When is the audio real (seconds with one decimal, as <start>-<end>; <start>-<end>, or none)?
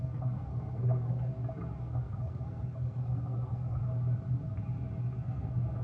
1.3-1.8; 3.8-5.2